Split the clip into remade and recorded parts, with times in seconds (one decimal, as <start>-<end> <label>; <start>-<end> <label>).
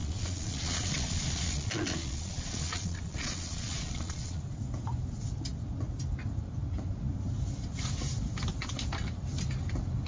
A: 0.0-4.4 remade; 4.4-10.1 recorded